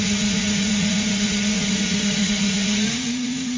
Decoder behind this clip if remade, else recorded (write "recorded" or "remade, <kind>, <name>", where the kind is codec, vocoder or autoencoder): remade, vocoder, Vocos